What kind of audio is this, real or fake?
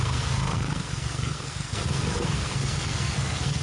fake